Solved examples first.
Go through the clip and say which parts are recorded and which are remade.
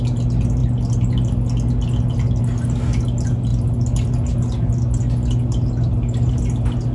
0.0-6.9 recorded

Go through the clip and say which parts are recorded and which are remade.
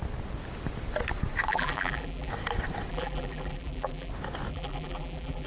0.0-1.5 recorded; 1.5-2.3 remade; 2.3-2.9 recorded; 2.9-4.1 remade; 4.1-4.5 recorded; 4.5-5.5 remade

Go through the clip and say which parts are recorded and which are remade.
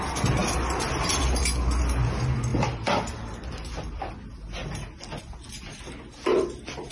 0.0-0.4 recorded; 0.4-1.2 remade; 1.2-2.5 recorded; 2.5-4.1 remade; 4.1-6.3 recorded; 6.3-6.9 remade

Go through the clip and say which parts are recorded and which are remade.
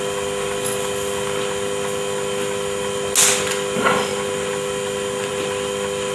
0.0-6.1 recorded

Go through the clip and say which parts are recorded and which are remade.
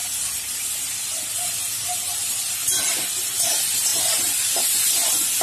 0.0-3.9 recorded; 3.9-4.7 remade; 4.7-5.4 recorded